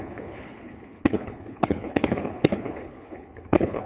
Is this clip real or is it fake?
fake